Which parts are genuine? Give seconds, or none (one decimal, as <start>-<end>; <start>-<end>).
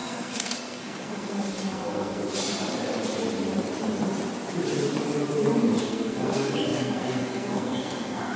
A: 2.2-5.8